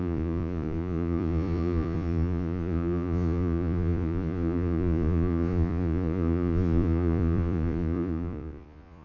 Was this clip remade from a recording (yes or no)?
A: yes